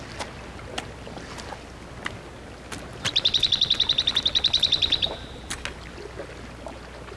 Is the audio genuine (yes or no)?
yes